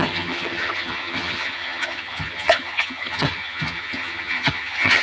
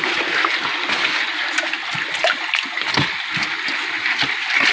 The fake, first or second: first